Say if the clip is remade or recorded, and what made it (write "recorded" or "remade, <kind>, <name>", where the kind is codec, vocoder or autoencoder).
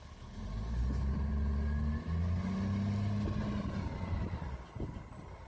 recorded